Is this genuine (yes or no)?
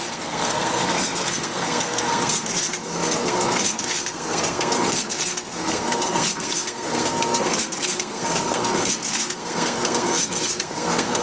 no